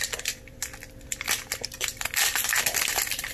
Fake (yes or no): yes